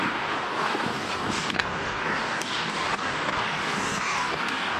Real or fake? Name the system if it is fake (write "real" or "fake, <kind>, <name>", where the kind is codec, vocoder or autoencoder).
fake, codec, DAC